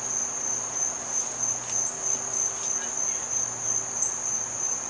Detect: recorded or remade recorded